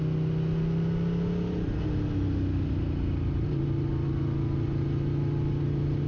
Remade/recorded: recorded